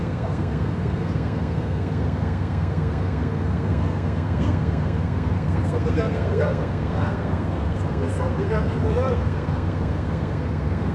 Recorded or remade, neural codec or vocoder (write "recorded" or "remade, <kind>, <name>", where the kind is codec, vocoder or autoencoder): remade, codec, SNAC